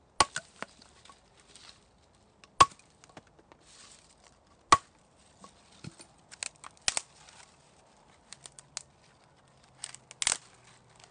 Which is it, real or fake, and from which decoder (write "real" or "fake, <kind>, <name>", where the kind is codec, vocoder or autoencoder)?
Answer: real